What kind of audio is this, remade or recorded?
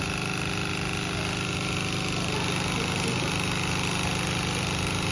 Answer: recorded